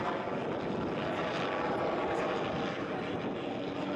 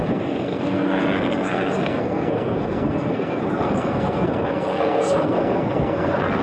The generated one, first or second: second